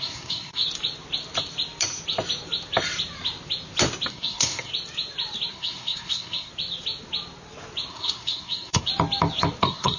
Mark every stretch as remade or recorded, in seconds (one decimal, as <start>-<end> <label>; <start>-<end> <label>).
0.0-0.6 remade; 0.6-4.1 recorded; 4.1-4.7 remade; 4.7-5.5 recorded; 5.5-6.5 remade; 6.5-7.9 recorded; 7.9-8.9 remade; 8.9-9.6 recorded; 9.6-10.0 remade